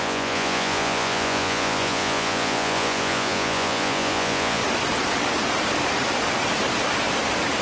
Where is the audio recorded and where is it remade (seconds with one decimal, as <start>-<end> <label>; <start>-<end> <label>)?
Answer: 0.0-4.6 remade; 4.6-7.6 recorded